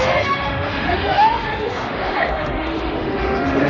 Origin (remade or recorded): remade